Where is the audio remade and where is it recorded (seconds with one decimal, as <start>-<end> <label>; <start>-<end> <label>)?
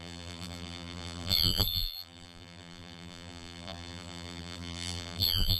0.0-5.6 remade